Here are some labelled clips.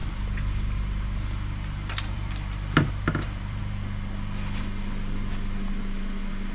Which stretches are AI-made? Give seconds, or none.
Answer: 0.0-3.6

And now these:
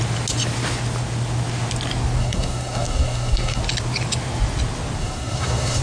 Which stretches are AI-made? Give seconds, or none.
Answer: 2.2-3.6; 5.0-5.8

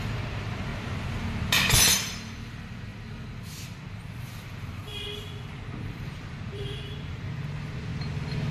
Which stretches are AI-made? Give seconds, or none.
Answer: 0.0-0.7; 1.9-4.9; 5.8-7.9

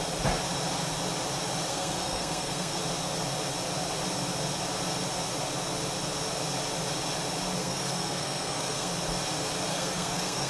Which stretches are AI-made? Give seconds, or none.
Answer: 1.7-2.8; 7.6-8.9; 9.7-10.5

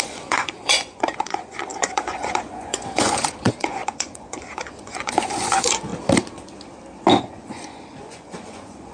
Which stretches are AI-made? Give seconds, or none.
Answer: 0.0-5.9; 7.2-8.9

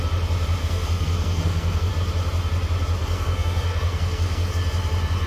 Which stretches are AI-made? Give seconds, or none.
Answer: 0.6-1.9; 3.0-4.5